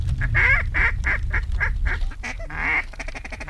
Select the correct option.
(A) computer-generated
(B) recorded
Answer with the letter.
B